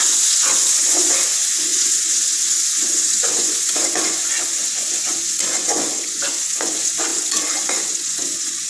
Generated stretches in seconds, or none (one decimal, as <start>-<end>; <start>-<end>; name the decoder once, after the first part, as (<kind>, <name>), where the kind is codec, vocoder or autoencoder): 0.0-8.7 (vocoder, Vocos)